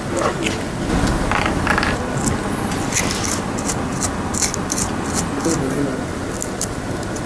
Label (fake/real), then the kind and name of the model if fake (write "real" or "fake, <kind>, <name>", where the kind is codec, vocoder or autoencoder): real